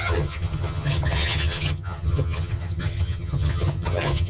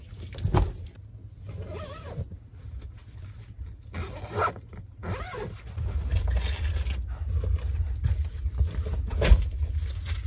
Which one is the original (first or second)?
second